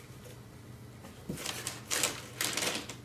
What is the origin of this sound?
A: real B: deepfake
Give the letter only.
A